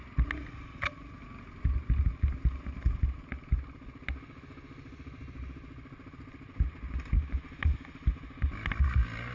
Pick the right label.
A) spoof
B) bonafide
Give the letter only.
B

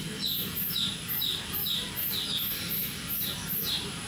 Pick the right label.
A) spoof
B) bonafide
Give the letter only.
B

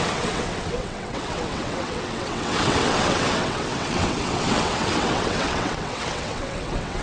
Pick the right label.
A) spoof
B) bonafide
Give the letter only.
A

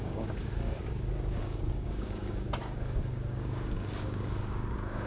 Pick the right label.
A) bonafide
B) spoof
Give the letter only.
B